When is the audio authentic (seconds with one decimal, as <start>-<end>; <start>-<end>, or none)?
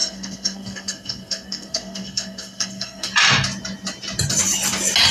3.1-5.1